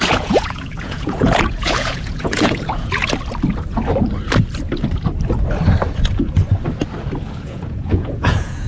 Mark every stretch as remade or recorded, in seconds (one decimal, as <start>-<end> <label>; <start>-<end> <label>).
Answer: 0.0-3.0 remade; 3.0-7.4 recorded; 7.4-8.7 remade

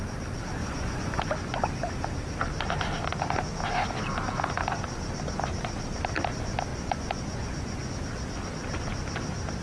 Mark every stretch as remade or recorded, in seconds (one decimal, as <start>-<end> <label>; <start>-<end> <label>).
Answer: 0.0-0.6 recorded; 0.6-1.2 remade; 1.2-6.7 recorded; 6.7-7.9 remade; 7.9-9.6 recorded

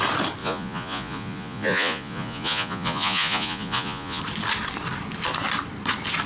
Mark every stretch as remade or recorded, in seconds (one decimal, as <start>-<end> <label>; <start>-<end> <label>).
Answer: 0.0-0.4 recorded; 0.4-4.2 remade; 4.2-6.3 recorded

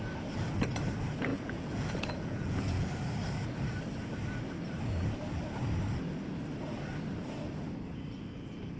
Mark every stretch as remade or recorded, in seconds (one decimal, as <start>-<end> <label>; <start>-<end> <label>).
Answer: 0.0-1.3 recorded; 1.3-2.9 remade; 2.9-8.8 recorded

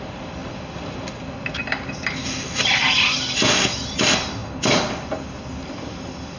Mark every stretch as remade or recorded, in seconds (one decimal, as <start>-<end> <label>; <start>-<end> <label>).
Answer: 0.0-6.4 recorded

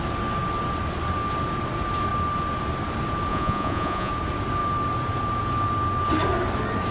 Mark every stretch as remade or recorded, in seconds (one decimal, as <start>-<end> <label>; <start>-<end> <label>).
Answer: 0.0-3.3 recorded; 3.3-4.1 remade; 4.1-6.9 recorded

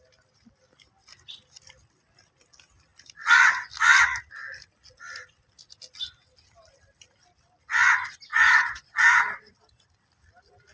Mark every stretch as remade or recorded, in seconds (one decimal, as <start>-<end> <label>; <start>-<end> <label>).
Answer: 0.0-8.3 recorded; 8.3-9.5 remade; 9.5-10.7 recorded